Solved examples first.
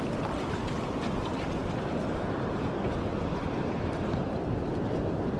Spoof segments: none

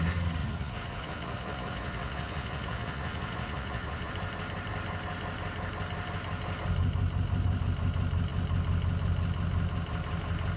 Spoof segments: 0.4-4.1 (vocoder, Vocos)

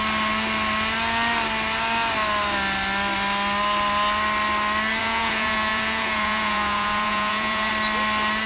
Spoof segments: 5.0-7.7 (vocoder, Vocos)

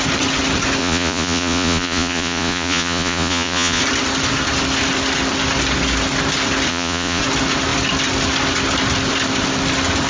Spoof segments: 0.8-3.8 (vocoder, Vocos); 6.7-7.2

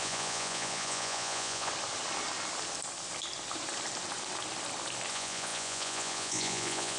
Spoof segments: 0.0-1.7 (vocoder, Vocos); 5.1-7.0

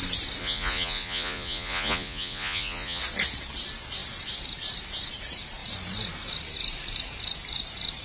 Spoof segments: 0.4-3.0 (vocoder, Vocos)